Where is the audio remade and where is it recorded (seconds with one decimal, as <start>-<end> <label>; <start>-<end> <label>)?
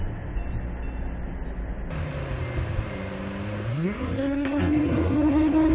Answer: 0.0-3.7 recorded; 3.7-5.7 remade